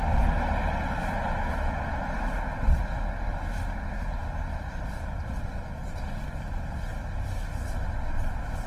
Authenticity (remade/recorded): recorded